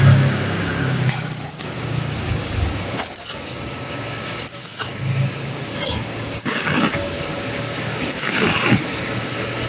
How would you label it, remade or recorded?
remade